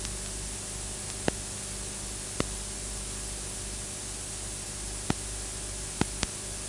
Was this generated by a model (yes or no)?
no